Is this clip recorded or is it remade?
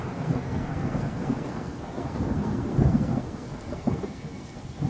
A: remade